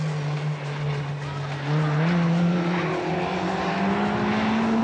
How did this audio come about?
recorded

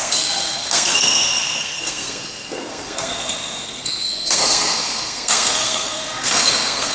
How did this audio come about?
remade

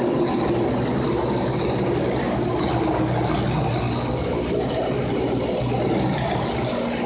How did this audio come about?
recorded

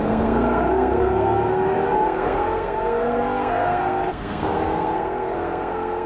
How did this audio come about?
remade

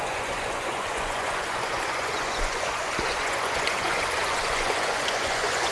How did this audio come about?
remade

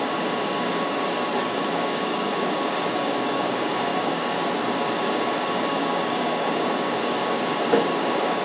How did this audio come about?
remade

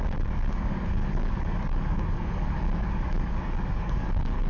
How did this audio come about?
remade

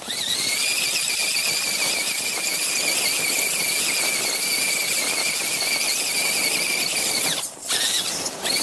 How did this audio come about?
recorded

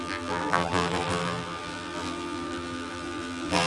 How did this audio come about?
remade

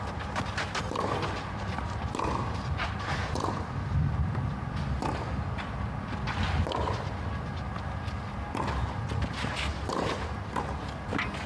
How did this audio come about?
recorded